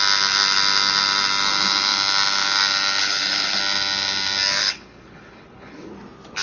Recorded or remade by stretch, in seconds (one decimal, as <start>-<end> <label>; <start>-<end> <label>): 0.0-3.0 recorded; 3.0-3.6 remade; 3.6-4.6 recorded; 4.6-5.9 remade; 5.9-6.4 recorded